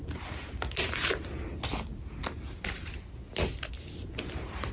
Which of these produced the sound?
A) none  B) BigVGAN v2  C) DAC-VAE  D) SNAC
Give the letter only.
A